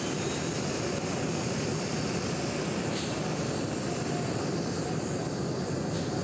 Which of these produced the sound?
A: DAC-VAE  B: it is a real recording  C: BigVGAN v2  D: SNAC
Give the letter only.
B